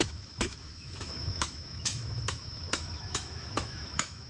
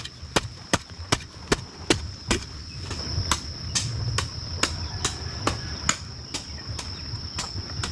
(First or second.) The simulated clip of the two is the first